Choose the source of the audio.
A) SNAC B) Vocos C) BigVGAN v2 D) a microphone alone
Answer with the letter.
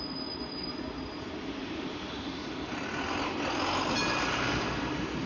D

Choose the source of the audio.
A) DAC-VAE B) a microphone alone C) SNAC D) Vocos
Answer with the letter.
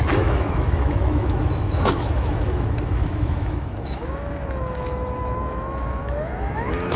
A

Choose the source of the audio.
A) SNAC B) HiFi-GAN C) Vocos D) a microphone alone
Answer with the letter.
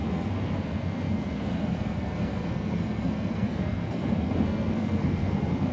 A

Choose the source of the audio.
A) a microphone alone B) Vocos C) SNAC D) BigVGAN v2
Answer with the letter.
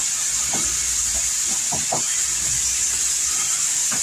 A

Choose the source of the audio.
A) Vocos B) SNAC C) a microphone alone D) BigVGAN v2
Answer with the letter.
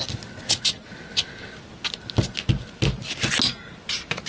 C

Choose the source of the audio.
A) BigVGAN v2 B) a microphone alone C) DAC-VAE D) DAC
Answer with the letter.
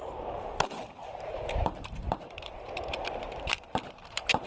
A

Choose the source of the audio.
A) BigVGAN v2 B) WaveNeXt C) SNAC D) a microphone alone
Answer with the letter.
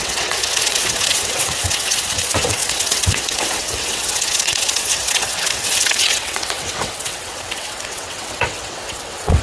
B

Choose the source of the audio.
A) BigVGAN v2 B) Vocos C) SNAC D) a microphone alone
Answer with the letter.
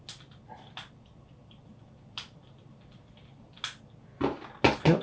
D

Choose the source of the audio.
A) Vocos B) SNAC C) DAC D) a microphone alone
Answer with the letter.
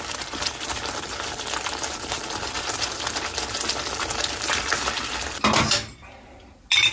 D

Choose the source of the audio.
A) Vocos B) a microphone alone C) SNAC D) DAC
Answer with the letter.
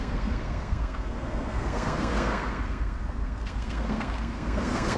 C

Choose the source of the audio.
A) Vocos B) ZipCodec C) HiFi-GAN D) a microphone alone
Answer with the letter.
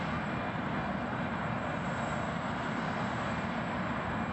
D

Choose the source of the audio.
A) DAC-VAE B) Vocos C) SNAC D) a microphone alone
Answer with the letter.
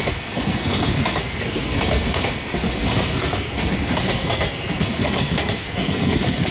C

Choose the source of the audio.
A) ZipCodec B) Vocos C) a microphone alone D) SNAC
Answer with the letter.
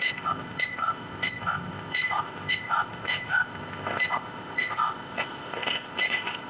A